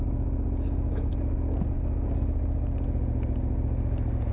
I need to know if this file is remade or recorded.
recorded